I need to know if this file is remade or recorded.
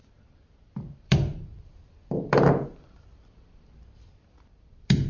remade